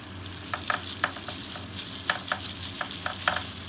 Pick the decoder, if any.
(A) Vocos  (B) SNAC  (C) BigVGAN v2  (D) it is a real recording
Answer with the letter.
D